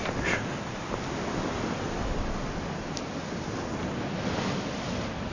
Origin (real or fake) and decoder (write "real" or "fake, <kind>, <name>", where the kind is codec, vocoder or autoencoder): real